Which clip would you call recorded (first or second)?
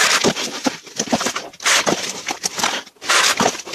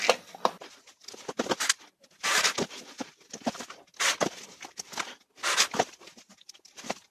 second